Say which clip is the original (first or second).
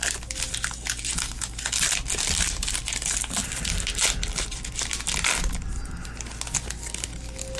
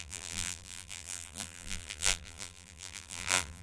first